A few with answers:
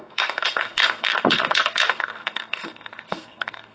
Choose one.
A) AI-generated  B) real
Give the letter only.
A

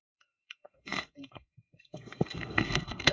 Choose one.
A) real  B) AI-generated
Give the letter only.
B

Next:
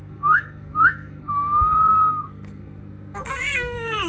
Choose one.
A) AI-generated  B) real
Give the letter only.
A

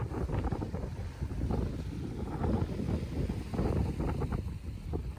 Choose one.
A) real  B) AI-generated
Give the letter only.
A